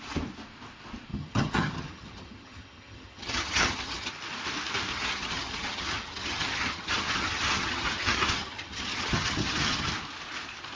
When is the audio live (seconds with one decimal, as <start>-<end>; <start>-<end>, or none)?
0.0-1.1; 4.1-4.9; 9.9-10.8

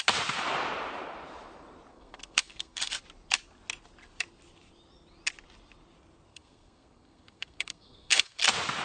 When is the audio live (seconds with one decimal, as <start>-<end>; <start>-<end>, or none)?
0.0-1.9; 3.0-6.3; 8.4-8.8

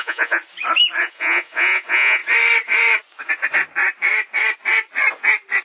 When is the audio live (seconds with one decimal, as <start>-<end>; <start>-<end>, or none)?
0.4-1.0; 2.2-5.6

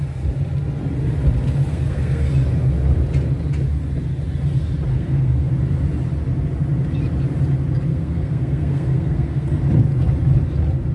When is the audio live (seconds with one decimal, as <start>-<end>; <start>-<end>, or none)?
0.0-1.7; 2.2-4.9; 5.5-7.9; 9.6-10.9

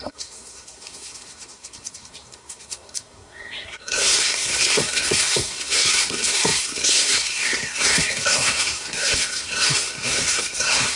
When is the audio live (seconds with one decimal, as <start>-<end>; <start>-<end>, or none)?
none

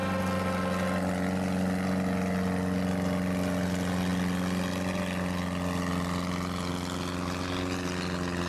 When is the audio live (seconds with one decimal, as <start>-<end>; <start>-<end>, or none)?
0.0-8.5